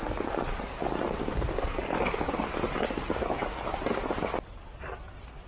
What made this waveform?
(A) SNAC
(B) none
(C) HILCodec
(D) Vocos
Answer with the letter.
B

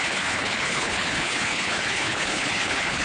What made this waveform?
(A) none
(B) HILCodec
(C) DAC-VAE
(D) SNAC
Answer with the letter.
B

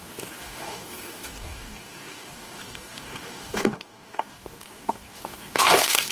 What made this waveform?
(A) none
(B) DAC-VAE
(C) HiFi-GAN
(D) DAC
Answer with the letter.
D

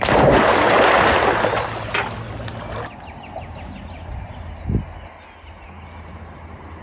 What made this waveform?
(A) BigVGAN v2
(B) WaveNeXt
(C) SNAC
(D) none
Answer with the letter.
D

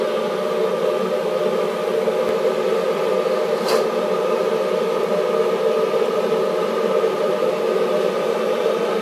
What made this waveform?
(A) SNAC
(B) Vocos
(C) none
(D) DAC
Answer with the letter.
C